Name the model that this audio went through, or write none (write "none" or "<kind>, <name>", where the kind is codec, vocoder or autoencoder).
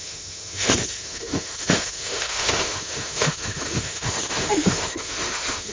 autoencoder, DAC-VAE